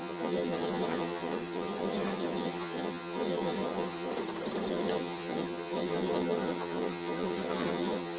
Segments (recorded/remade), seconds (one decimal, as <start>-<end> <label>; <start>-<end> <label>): 0.0-4.1 remade; 4.1-4.7 recorded; 4.7-8.2 remade